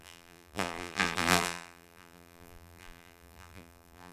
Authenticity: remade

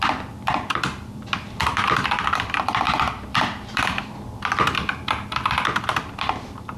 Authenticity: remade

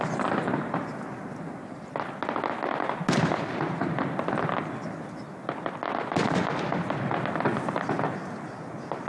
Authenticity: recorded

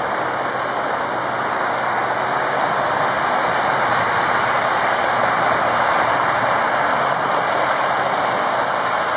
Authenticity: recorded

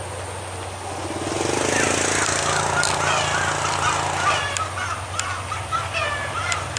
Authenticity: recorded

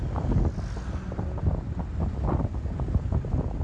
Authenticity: recorded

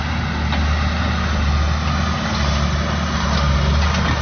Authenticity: recorded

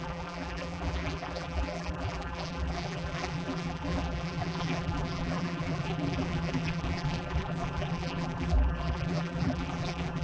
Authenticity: remade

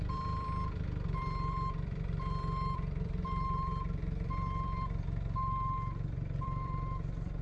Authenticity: remade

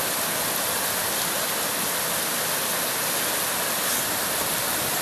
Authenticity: recorded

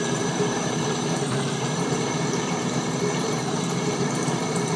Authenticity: remade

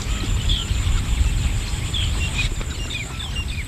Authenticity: remade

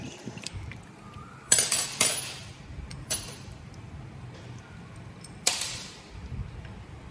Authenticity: remade